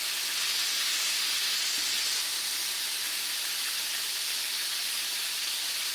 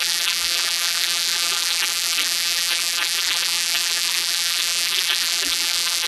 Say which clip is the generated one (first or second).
second